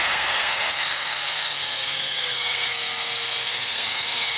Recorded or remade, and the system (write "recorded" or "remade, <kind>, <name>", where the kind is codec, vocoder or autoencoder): remade, codec, SNAC